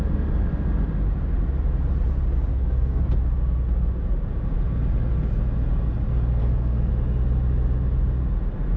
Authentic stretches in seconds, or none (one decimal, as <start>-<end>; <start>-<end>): 0.0-2.5; 3.0-6.4; 6.9-8.8